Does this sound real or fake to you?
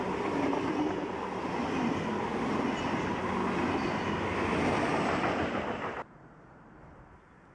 real